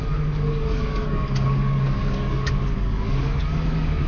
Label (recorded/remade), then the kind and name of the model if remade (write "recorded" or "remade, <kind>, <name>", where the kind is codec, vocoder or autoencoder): remade, codec, DAC